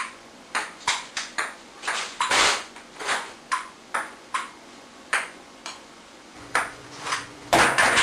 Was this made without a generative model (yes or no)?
no